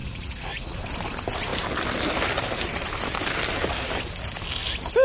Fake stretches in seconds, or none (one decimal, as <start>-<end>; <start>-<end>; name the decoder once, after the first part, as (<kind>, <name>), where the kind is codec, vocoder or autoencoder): 0.0-0.8 (vocoder, Vocos)